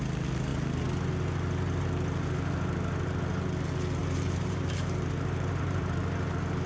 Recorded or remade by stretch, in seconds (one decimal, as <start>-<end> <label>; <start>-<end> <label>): 0.0-4.0 recorded; 4.0-6.0 remade; 6.0-6.7 recorded